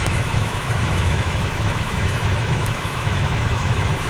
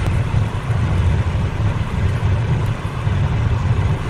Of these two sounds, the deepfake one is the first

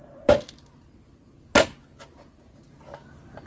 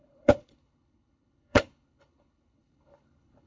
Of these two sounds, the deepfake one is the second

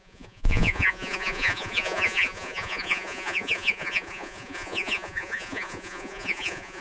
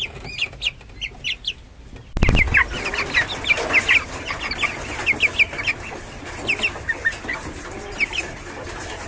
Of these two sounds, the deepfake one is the first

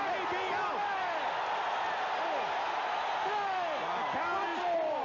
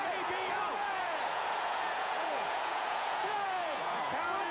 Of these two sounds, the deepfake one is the second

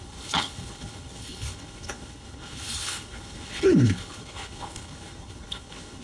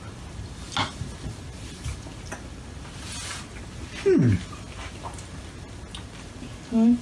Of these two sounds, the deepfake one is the first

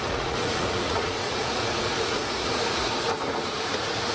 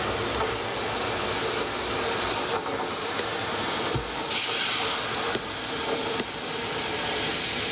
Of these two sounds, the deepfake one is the first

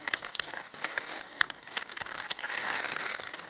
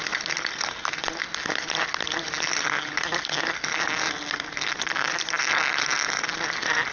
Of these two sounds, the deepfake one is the first